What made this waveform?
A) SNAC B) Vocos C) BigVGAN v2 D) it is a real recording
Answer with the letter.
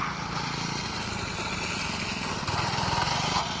D